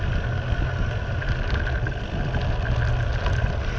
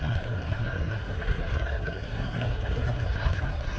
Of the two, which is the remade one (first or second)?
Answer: second